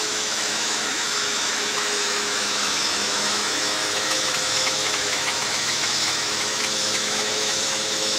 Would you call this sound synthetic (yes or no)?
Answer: yes